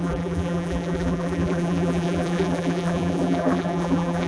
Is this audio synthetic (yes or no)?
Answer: yes